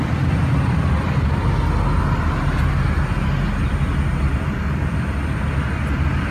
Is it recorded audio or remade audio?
recorded